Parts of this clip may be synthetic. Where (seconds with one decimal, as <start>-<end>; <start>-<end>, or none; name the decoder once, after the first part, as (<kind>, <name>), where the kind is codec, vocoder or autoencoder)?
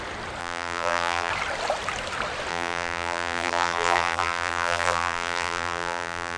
0.4-1.3 (vocoder, BigVGAN v2); 2.5-6.4